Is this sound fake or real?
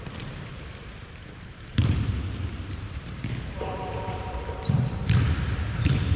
fake